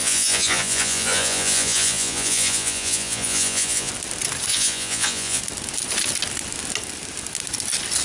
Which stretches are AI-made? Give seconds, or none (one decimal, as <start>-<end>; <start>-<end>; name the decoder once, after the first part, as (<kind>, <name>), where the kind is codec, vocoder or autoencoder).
0.0-3.9 (vocoder, Vocos); 4.5-5.4